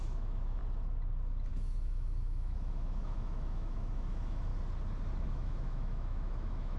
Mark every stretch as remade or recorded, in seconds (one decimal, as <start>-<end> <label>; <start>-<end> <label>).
0.0-0.6 remade; 0.6-1.5 recorded; 1.5-4.5 remade; 4.5-5.3 recorded; 5.3-6.8 remade